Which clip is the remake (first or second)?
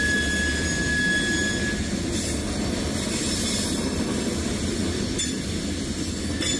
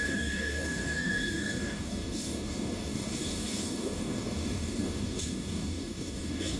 second